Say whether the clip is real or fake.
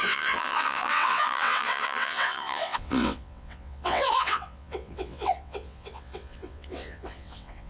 fake